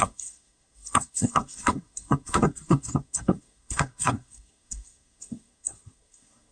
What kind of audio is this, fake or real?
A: fake